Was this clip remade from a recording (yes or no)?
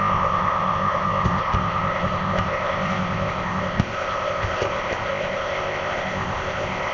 yes